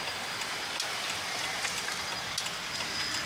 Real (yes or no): yes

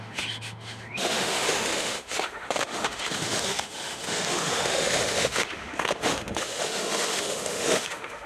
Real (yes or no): no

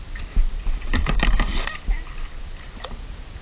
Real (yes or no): yes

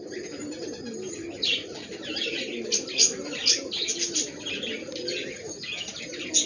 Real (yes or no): yes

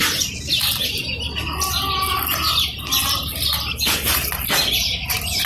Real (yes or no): yes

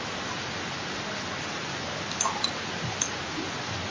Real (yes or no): yes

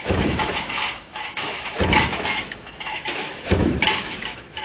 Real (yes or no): no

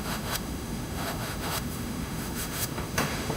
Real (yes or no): no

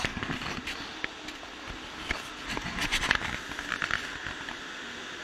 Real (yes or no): yes